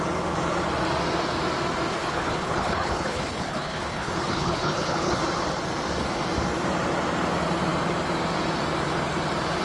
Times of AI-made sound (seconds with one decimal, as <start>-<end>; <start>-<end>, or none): 1.9-5.2